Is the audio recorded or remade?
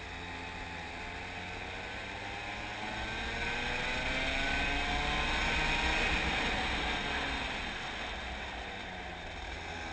recorded